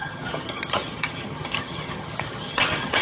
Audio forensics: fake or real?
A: fake